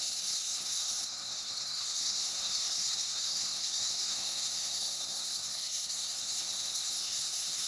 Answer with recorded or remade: remade